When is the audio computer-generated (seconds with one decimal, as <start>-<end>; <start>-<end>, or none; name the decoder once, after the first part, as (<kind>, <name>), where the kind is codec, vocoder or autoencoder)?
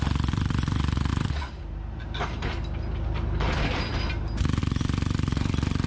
none